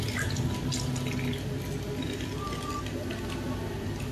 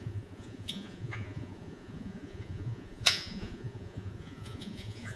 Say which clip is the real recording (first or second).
first